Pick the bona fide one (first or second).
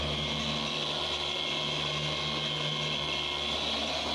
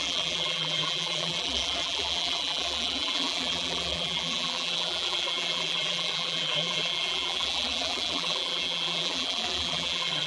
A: first